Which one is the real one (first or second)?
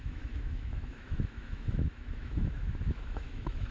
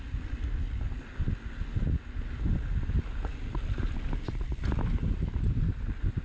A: second